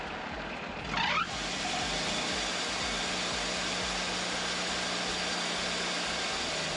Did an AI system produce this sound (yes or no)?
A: no